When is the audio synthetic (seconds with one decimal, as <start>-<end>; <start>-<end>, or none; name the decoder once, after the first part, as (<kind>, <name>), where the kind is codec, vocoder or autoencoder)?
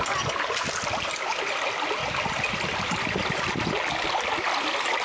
none